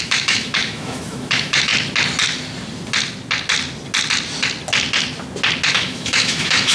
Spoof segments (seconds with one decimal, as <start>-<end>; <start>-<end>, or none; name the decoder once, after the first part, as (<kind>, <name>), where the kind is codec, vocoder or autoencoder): 0.0-1.7 (autoencoder, DAC-VAE); 5.7-6.7